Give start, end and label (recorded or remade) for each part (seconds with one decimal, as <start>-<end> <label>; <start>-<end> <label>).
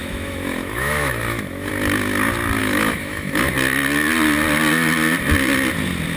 0.0-1.7 remade; 1.7-2.6 recorded; 2.6-3.5 remade; 3.5-6.2 recorded